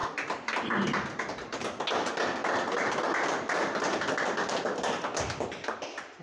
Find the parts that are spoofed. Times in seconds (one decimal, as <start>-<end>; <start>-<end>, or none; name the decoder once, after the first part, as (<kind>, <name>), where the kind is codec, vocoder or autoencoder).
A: 0.0-1.2 (vocoder, BigVGAN v2); 2.4-6.2